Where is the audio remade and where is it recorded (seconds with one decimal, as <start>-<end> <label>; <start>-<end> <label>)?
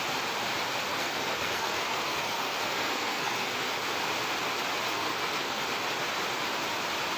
0.0-0.9 recorded; 0.9-3.7 remade; 3.7-4.9 recorded; 4.9-5.6 remade; 5.6-7.2 recorded